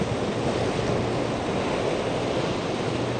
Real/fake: real